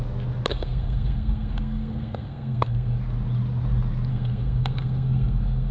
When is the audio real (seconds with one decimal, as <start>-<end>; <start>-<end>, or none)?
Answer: 0.0-0.5; 3.0-4.1